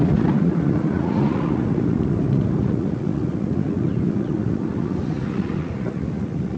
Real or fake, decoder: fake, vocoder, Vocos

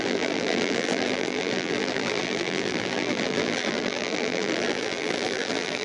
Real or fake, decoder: fake, vocoder, BigVGAN v2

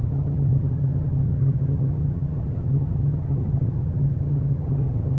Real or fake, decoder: fake, vocoder, HiFi-GAN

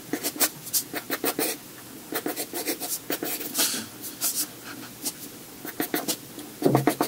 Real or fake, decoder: real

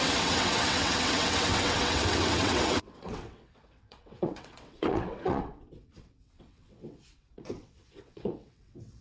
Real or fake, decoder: fake, vocoder, WaveNeXt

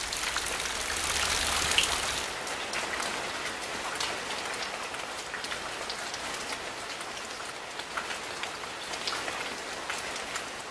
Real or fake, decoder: real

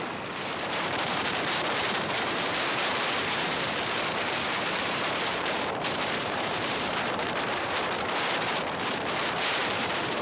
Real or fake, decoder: fake, vocoder, BigVGAN v2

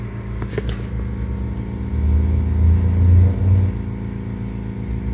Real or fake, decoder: real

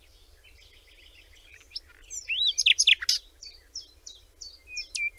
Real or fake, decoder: real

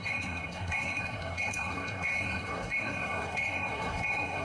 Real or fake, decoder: fake, codec, SNAC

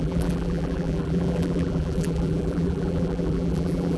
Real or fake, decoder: fake, vocoder, BigVGAN v2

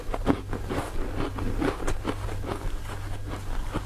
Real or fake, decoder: real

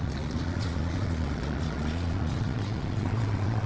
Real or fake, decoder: fake, vocoder, Vocos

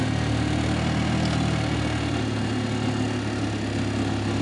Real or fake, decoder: real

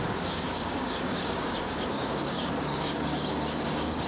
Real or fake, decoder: fake, codec, DAC